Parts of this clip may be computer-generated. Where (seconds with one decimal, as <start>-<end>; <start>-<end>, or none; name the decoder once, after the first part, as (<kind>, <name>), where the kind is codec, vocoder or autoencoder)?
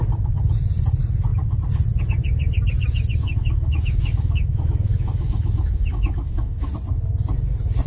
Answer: 3.3-6.7 (autoencoder, DAC-VAE)